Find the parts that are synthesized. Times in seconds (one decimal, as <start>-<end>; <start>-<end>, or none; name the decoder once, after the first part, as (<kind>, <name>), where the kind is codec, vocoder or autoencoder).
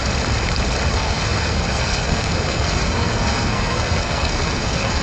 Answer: 0.9-5.0 (codec, SNAC)